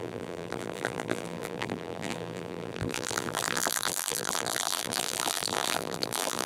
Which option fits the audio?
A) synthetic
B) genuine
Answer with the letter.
A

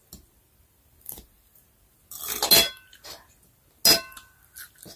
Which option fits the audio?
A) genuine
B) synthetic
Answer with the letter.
A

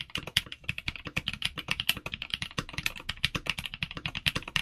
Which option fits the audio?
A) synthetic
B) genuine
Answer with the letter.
A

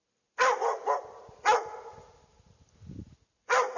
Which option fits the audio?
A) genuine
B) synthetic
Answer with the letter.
A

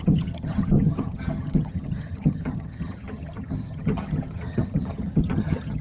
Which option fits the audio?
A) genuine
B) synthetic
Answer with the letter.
B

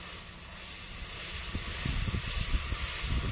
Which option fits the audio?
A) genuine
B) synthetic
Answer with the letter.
A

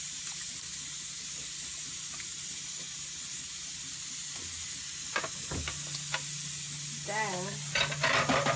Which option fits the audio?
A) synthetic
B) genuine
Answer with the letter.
B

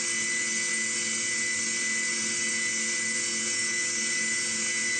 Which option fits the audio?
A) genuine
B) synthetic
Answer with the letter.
A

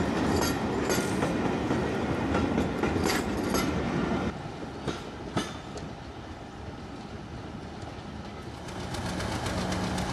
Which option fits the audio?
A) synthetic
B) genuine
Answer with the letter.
B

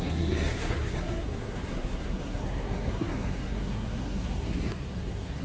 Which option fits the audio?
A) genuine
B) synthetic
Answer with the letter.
B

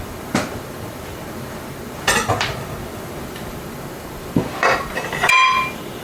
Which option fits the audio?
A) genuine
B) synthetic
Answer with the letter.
B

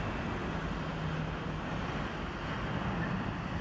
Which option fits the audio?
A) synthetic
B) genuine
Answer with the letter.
B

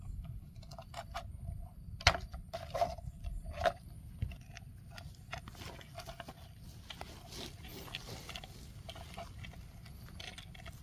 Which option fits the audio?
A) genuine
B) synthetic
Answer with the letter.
A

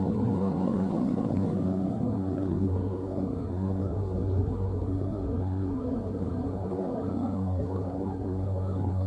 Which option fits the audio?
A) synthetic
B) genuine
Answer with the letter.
A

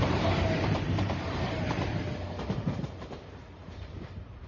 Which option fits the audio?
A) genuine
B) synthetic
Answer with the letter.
B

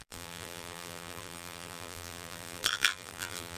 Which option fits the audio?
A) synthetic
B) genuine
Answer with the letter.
A